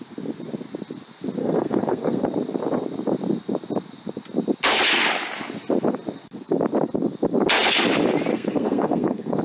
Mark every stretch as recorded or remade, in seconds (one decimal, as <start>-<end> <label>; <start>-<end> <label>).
0.0-1.4 recorded; 1.4-2.2 remade; 2.2-8.3 recorded; 8.3-9.4 remade